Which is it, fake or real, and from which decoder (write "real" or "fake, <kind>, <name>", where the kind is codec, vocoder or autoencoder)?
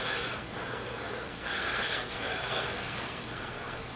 fake, codec, SNAC